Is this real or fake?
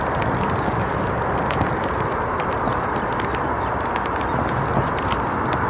real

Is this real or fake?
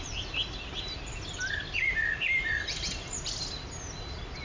real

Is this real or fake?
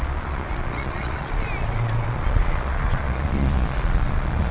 fake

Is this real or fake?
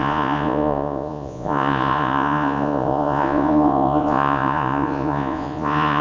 fake